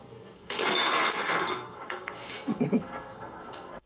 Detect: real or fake fake